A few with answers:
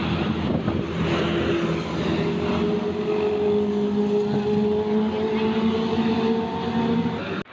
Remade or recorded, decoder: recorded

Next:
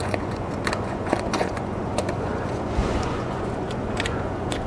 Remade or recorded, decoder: remade, vocoder, Vocos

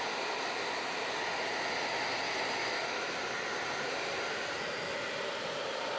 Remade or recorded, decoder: recorded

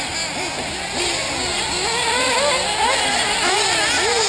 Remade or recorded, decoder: recorded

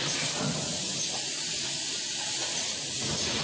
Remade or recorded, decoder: remade, vocoder, Vocos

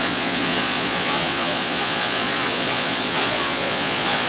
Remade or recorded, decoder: remade, vocoder, Vocos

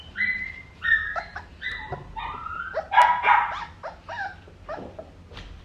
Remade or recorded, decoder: recorded